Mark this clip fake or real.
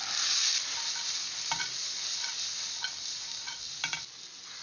real